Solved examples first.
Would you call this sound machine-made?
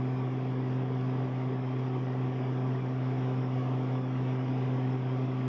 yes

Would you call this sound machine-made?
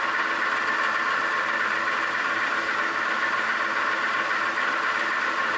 no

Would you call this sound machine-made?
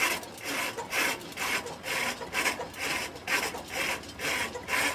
no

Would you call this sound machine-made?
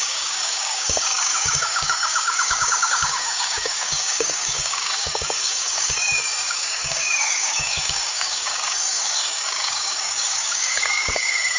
yes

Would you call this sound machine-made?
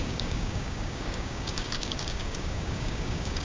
yes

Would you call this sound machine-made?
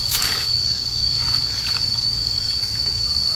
yes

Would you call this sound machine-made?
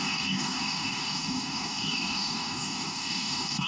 yes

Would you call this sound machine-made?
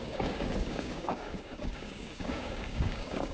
yes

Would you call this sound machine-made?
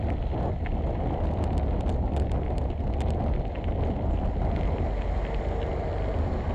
no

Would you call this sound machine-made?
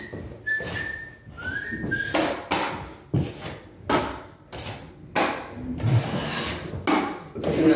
no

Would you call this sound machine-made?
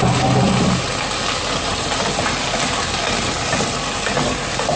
no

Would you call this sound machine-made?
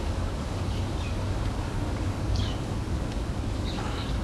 yes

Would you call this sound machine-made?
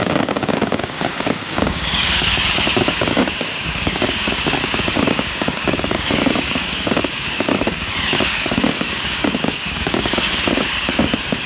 yes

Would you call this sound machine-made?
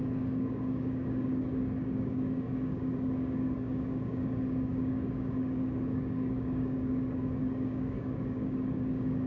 yes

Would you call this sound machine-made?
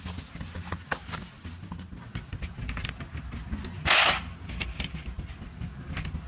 no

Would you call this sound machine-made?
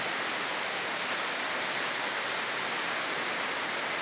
no